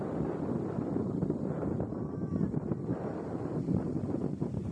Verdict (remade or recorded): recorded